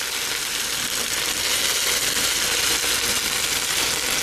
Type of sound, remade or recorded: recorded